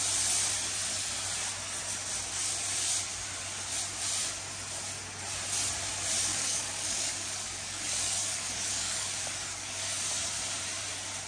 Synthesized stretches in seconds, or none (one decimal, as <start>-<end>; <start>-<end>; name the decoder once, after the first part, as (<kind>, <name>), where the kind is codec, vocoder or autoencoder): 6.3-10.0 (codec, DAC)